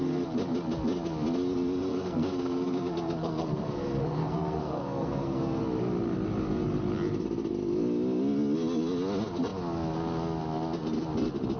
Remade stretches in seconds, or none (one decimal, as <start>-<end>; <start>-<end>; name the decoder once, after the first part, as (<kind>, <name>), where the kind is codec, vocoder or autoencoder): 1.9-5.6 (codec, SNAC)

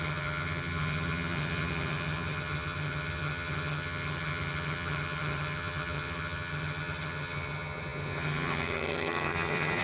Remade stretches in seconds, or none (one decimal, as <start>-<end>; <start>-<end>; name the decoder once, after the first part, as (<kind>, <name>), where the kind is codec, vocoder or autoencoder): 0.0-9.8 (vocoder, HiFi-GAN)

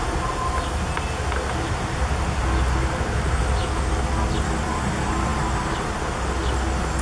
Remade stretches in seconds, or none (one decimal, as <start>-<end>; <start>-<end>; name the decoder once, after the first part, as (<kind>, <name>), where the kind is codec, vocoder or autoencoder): none